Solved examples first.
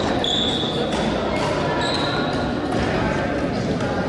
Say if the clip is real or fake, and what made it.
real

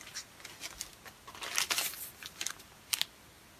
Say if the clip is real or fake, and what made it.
real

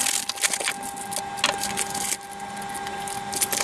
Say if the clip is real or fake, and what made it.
real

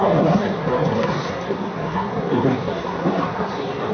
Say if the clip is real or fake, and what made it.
fake, codec, SNAC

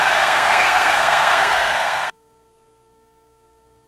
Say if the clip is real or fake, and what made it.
fake, codec, SNAC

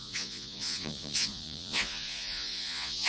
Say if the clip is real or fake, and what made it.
fake, vocoder, Vocos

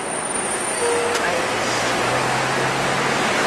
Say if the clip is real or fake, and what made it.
real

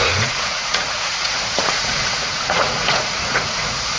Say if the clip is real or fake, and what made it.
fake, vocoder, Vocos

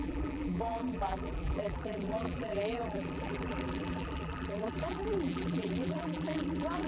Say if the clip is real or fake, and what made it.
fake, vocoder, BigVGAN v2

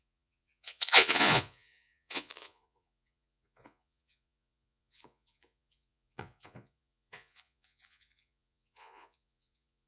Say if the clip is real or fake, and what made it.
fake, vocoder, Vocos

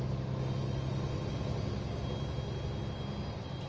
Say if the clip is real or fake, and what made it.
real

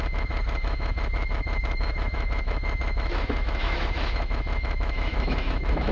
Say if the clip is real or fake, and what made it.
fake, autoencoder, DAC-VAE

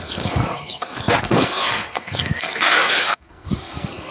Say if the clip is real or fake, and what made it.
fake, codec, SNAC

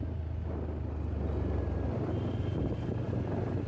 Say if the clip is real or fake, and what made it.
real